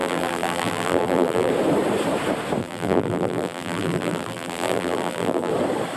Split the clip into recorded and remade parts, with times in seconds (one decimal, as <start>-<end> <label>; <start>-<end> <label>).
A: 0.0-1.5 remade; 1.5-2.6 recorded; 2.6-5.5 remade; 5.5-6.0 recorded